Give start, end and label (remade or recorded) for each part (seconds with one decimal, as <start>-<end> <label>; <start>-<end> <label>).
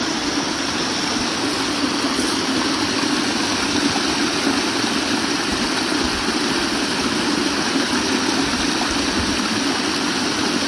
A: 0.0-10.7 recorded